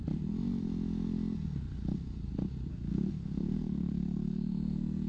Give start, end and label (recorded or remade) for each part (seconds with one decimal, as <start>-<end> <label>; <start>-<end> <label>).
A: 0.0-2.7 recorded; 2.7-5.1 remade